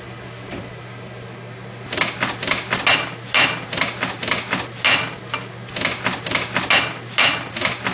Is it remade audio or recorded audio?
recorded